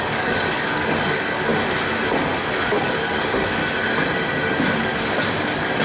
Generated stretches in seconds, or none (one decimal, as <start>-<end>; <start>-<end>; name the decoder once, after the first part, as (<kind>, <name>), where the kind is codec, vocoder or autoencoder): 0.0-1.5 (codec, DAC); 2.4-3.6; 4.8-5.8